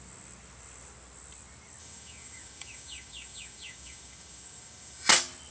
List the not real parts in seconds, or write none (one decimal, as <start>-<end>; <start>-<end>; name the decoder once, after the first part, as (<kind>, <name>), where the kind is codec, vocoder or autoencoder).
1.8-5.1 (autoencoder, DAC-VAE)